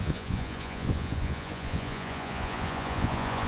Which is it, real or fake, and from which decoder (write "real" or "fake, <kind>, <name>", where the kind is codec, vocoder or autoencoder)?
fake, vocoder, Vocos